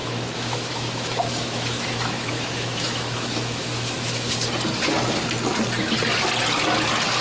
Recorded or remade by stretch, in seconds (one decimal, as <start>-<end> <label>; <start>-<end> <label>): 0.0-4.3 remade; 4.3-7.2 recorded